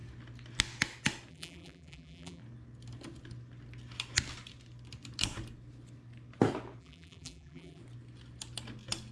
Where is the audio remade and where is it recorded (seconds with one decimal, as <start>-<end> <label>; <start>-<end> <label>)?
0.0-1.3 recorded; 1.3-2.4 remade; 2.4-6.8 recorded; 6.8-7.8 remade; 7.8-9.1 recorded